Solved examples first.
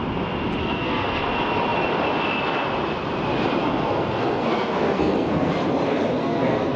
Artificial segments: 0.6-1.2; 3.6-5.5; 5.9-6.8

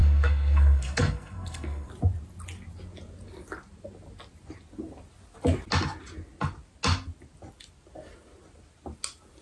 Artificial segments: 0.0-1.9